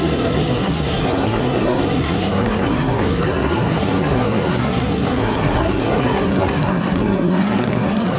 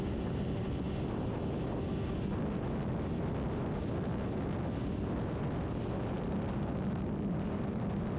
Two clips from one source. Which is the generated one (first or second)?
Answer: first